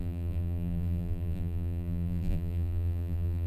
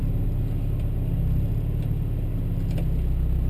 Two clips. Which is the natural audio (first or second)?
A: second